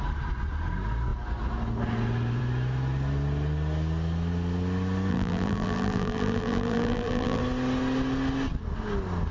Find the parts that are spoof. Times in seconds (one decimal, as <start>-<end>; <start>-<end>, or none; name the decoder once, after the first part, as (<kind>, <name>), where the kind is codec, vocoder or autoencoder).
5.1-7.4 (vocoder, BigVGAN v2)